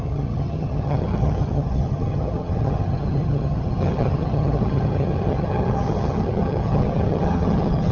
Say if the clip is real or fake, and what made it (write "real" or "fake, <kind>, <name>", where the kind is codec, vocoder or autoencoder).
fake, vocoder, HiFi-GAN